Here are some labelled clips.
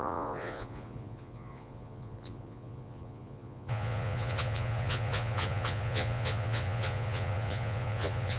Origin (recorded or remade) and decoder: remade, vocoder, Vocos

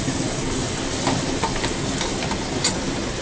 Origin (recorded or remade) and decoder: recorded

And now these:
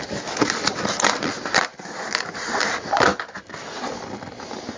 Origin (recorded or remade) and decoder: recorded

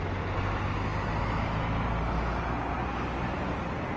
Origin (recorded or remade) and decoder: recorded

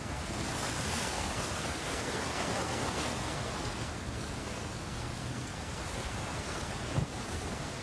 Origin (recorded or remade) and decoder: remade, codec, SNAC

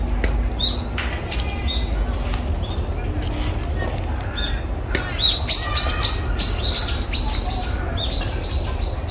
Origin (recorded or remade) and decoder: recorded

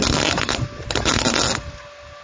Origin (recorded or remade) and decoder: recorded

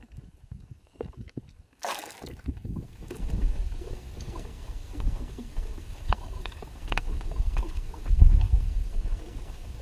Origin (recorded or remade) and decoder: remade, codec, SNAC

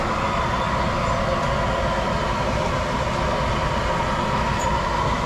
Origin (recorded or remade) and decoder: recorded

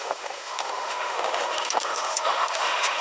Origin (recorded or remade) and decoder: remade, autoencoder, DAC-VAE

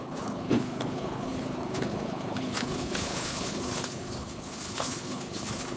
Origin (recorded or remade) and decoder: remade, codec, HILCodec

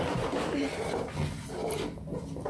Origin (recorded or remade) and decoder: remade, vocoder, BigVGAN v2